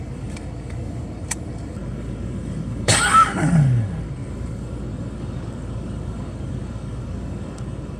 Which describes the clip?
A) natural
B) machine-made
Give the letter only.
B